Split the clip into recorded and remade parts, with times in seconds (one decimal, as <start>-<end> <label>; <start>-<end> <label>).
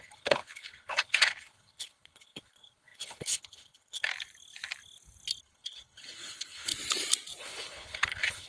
0.0-4.1 remade; 4.1-5.4 recorded; 5.4-6.7 remade; 6.7-7.4 recorded; 7.4-8.5 remade